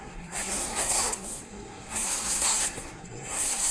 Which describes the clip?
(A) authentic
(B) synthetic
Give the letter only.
B